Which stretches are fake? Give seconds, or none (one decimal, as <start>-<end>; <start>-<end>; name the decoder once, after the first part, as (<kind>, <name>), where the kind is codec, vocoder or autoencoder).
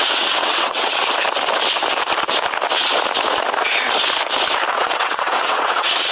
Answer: 0.0-1.0 (vocoder, WaveNeXt); 4.7-6.1